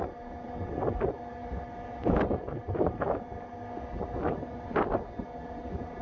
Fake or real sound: real